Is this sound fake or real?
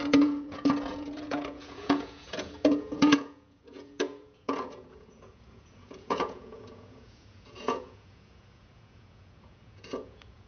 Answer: fake